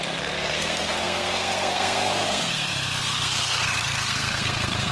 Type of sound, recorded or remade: remade